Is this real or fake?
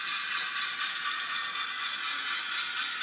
real